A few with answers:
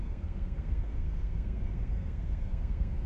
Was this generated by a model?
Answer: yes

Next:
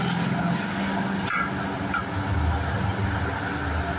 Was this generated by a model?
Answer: no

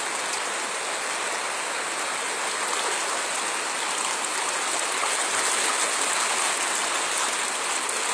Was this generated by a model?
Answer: no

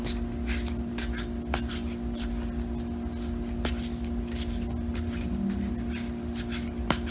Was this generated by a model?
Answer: no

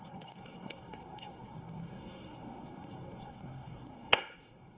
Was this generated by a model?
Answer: yes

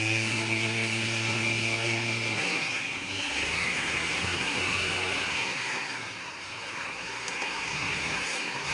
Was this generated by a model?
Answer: yes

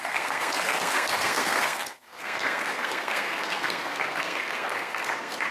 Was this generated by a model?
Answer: yes